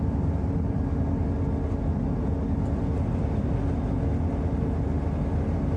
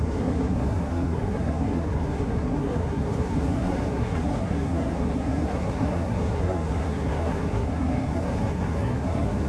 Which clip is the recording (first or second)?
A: first